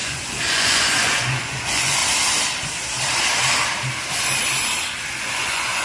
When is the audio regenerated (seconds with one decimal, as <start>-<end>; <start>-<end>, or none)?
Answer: 0.0-2.0; 5.1-5.8